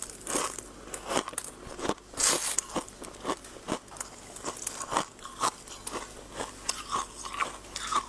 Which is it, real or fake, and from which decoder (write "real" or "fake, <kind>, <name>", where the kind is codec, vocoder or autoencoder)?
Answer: real